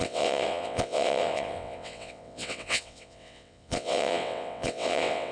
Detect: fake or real fake